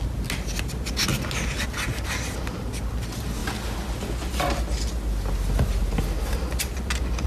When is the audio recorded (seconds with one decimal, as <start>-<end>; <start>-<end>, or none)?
0.0-7.3